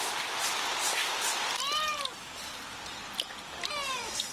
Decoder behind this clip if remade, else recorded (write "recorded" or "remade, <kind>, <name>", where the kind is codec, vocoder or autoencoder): recorded